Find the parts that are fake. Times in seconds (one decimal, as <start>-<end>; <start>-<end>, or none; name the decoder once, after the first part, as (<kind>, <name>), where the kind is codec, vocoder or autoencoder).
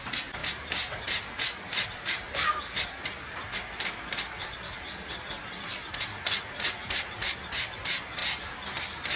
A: 6.1-7.3 (vocoder, Vocos)